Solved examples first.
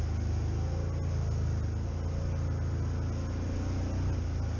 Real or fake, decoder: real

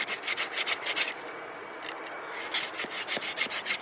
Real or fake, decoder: real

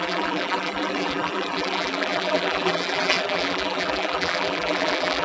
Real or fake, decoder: fake, vocoder, BigVGAN v2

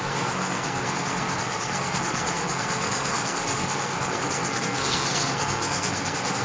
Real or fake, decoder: fake, codec, SNAC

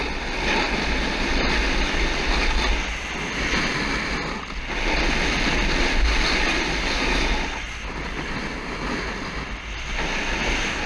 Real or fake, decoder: real